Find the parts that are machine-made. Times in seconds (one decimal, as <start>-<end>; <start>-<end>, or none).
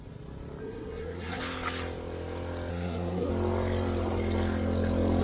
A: 0.6-1.4; 2.7-3.3